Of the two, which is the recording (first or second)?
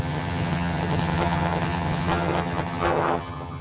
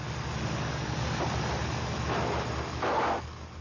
second